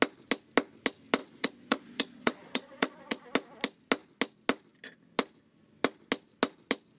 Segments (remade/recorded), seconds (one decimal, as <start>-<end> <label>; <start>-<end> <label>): 0.0-1.2 recorded; 1.2-3.2 remade; 3.2-7.0 recorded